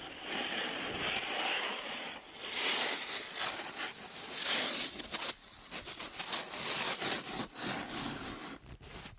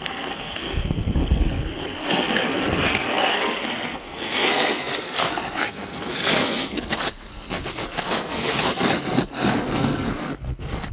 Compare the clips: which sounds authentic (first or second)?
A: first